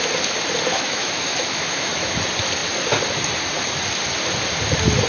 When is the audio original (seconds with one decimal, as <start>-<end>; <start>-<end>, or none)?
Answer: 0.0-0.7; 2.2-5.1